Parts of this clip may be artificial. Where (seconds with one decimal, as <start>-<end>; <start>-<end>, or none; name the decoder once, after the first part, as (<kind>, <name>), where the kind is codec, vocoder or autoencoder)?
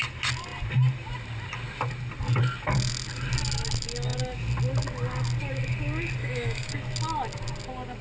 6.2-6.7 (autoencoder, DAC-VAE)